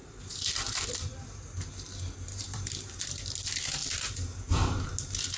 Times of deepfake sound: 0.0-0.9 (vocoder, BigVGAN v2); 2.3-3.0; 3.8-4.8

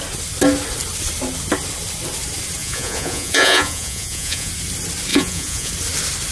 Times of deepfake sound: 2.6-4.5 (vocoder, Vocos); 5.1-5.7

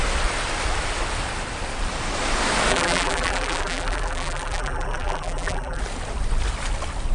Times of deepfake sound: 2.7-5.8 (vocoder, BigVGAN v2)

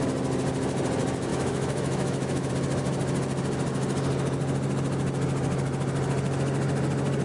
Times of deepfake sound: 1.3-2.5 (autoencoder, DAC-VAE)

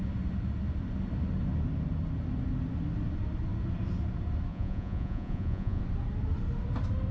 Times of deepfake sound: 4.5-5.8 (vocoder, Vocos)

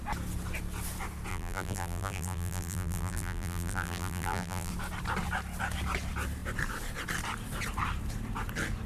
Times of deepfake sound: 1.3-4.7 (vocoder, BigVGAN v2)